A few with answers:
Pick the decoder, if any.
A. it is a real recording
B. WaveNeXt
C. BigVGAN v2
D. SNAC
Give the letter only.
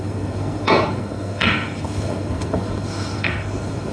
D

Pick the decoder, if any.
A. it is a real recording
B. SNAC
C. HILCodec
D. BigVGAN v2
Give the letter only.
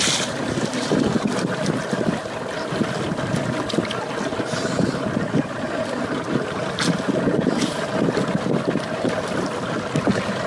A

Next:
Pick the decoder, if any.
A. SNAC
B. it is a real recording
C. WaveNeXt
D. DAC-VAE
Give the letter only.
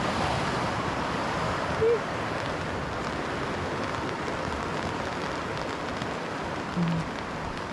B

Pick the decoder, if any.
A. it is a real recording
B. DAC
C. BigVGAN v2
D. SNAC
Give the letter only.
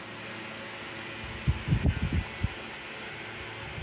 A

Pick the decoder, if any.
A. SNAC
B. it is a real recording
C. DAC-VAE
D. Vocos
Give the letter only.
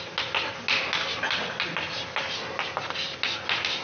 B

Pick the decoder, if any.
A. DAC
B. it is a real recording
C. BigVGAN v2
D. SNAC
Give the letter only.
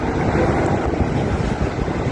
B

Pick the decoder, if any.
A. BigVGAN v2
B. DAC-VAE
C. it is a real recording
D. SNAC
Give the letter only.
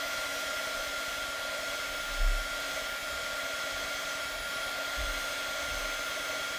C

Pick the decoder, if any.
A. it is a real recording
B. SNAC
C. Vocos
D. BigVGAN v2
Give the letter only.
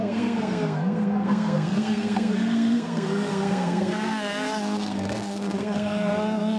B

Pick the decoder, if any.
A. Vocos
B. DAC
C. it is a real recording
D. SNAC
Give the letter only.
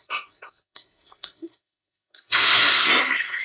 D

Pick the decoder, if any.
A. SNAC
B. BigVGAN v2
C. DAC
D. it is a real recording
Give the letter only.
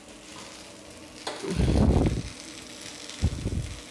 D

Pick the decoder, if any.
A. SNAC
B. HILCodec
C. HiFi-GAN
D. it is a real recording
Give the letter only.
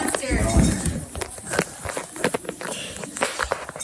D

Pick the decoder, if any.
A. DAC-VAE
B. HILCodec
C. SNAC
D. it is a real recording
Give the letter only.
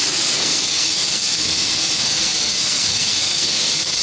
C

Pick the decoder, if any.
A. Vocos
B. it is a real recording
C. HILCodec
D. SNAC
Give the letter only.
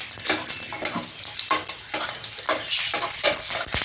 B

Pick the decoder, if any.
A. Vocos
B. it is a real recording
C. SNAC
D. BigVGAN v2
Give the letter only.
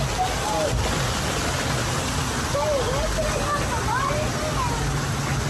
B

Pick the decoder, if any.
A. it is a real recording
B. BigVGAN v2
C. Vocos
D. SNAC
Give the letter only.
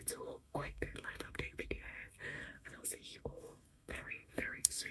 D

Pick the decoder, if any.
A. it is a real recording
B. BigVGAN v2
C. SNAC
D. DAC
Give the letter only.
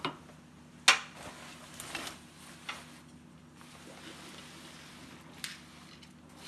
A